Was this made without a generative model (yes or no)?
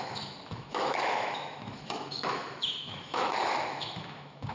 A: no